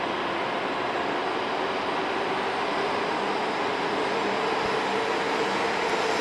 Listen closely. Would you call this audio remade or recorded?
recorded